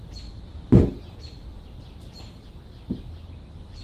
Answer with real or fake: real